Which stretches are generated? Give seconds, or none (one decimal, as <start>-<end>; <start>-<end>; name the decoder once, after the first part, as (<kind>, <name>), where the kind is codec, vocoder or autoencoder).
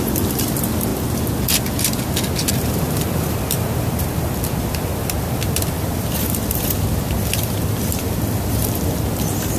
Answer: 0.0-0.9 (vocoder, BigVGAN v2); 2.5-9.6